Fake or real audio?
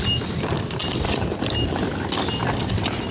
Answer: real